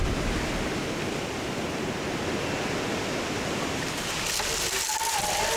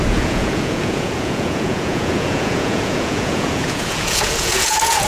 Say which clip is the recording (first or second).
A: first